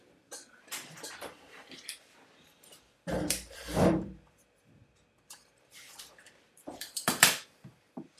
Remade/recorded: remade